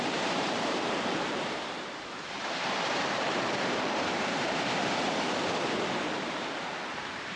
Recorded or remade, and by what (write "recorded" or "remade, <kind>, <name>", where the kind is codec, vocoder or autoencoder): remade, vocoder, BigVGAN v2